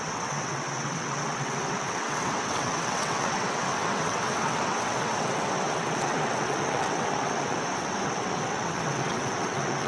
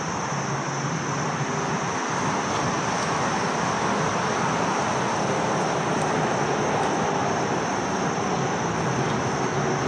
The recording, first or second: second